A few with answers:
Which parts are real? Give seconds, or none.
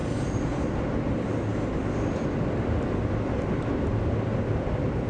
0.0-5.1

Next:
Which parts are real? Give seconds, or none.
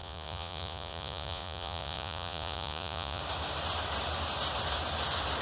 3.2-5.4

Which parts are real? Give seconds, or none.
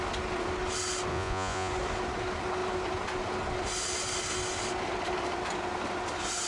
0.0-1.1; 1.7-6.5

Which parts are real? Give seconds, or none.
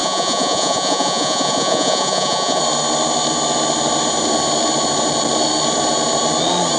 2.6-6.8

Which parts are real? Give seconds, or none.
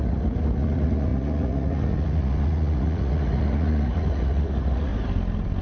4.9-5.6